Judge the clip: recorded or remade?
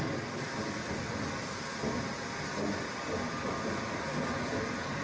recorded